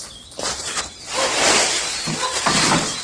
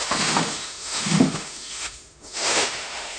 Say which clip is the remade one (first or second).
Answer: second